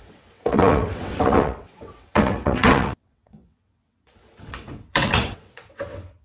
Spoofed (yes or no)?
yes